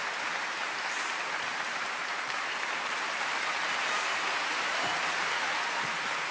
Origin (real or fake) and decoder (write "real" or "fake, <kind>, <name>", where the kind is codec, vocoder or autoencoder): fake, vocoder, BigVGAN v2